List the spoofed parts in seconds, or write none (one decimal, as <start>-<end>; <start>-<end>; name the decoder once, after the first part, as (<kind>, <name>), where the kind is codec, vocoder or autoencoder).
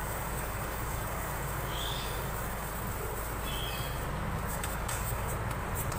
0.0-2.7 (codec, DAC); 4.5-5.3